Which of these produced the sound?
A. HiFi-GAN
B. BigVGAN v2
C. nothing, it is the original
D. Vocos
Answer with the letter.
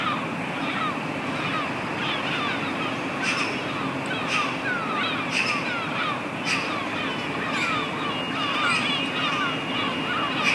C